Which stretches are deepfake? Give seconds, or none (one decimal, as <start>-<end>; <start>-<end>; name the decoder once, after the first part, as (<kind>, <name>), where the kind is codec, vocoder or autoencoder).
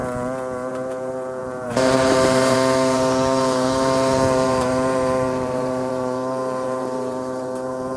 0.7-8.0 (vocoder, BigVGAN v2)